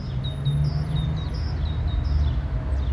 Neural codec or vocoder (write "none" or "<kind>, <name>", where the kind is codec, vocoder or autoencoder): none